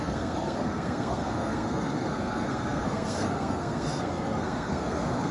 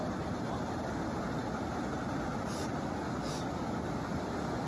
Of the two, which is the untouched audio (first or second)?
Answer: second